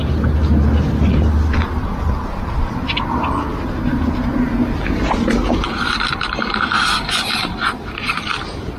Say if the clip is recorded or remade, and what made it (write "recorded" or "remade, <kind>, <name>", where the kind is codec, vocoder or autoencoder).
recorded